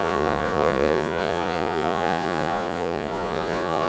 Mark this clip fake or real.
fake